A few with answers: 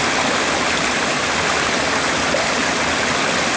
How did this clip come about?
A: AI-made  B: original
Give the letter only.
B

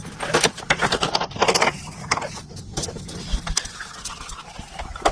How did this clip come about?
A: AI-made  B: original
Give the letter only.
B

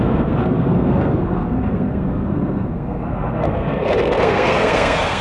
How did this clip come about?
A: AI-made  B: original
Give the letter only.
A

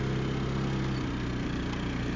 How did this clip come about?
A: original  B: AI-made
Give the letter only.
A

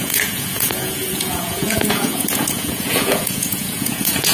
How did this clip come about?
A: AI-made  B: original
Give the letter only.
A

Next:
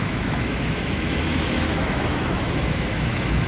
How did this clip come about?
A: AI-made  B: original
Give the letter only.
A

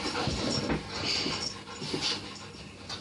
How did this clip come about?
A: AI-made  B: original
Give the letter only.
B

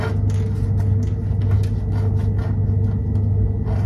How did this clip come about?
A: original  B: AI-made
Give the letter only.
A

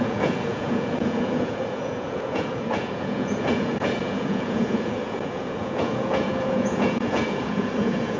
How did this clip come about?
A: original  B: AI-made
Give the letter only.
B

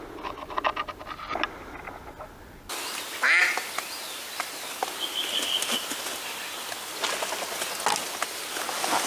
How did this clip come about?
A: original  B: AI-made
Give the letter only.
A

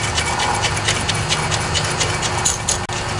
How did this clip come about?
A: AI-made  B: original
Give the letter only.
B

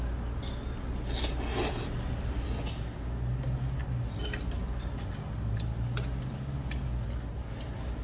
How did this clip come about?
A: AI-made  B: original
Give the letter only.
B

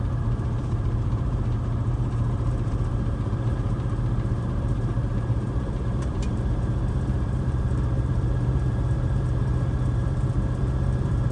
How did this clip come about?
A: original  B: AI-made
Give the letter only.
B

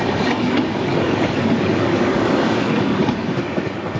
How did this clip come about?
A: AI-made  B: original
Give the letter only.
A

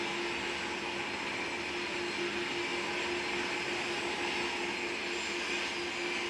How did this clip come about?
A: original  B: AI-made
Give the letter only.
A